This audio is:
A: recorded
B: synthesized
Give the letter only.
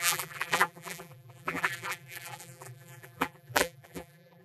B